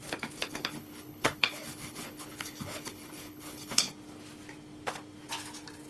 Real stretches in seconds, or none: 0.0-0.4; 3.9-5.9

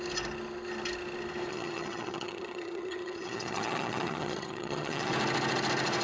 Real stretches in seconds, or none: 0.0-1.5; 5.1-6.0

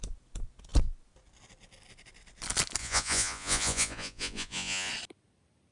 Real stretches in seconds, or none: 0.0-2.8; 4.9-5.7

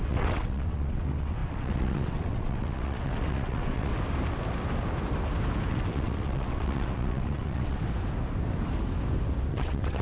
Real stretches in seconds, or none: 3.9-5.7; 7.8-9.5

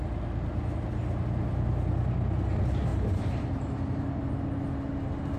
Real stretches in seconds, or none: 0.0-2.9; 4.2-5.4

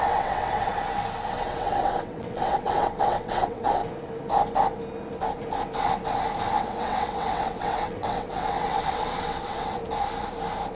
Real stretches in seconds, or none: 0.7-1.3; 3.8-6.6; 9.8-10.7